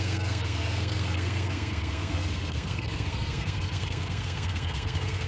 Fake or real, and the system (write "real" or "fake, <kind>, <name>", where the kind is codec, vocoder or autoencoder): fake, codec, SNAC